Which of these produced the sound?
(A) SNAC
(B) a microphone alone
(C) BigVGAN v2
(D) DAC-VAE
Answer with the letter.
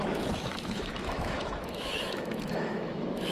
D